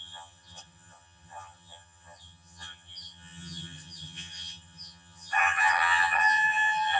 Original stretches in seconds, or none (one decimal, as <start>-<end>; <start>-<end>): none